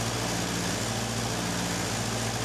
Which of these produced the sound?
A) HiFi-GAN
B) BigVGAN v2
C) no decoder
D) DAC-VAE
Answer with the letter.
C